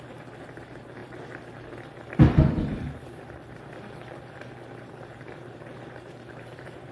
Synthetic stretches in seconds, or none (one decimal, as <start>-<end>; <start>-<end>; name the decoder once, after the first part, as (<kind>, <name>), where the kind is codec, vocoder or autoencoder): 1.0-1.6 (vocoder, BigVGAN v2); 2.7-6.9